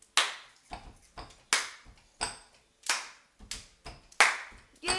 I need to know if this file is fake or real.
real